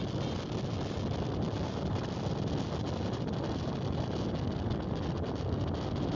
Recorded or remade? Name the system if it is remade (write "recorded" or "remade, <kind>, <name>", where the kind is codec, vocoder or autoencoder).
recorded